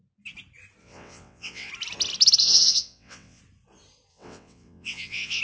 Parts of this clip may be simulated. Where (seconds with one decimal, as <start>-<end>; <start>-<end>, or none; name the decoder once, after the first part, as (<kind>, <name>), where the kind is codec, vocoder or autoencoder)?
0.8-1.7 (vocoder, WaveNeXt); 2.4-3.4; 4.1-5.4